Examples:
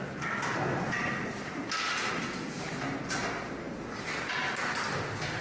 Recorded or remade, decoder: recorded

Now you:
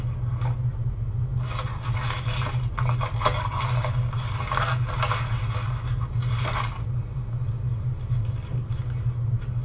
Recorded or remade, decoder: recorded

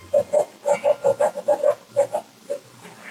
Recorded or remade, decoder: recorded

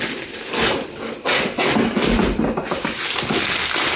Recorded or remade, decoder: recorded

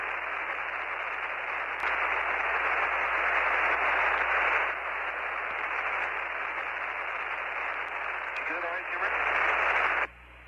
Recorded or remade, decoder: recorded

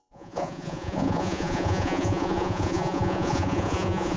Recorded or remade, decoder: remade, vocoder, Vocos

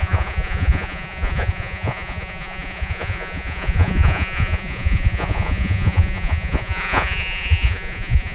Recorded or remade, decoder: remade, vocoder, Vocos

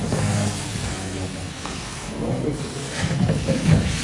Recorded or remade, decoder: remade, codec, SNAC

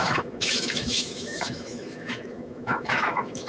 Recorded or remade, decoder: remade, autoencoder, DAC-VAE